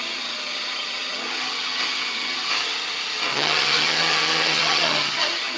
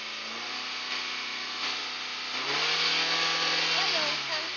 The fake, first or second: first